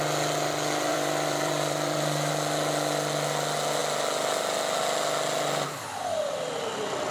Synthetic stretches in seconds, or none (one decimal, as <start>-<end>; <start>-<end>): 0.9-2.3